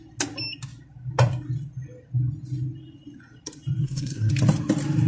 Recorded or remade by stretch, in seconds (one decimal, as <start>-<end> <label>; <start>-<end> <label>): 0.0-3.8 recorded; 3.8-4.3 remade; 4.3-5.1 recorded